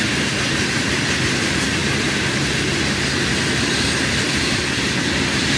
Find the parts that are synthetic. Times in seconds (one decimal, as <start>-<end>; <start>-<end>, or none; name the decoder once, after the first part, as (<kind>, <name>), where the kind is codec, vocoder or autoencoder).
none